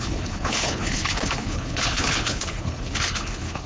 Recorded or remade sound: remade